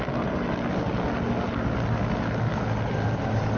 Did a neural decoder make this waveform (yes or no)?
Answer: no